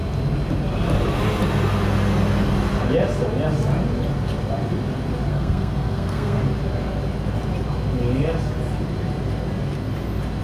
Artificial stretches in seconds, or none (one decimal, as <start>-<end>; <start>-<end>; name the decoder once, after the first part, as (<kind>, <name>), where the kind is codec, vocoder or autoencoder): 5.3-6.4 (codec, SNAC)